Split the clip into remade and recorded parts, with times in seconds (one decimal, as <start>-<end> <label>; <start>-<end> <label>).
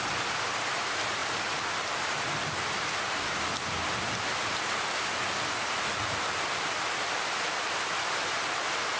0.0-9.0 recorded